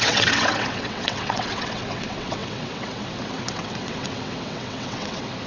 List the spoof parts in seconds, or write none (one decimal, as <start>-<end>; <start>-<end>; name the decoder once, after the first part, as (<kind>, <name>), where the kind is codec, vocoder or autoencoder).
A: 0.0-5.5 (vocoder, WaveNeXt)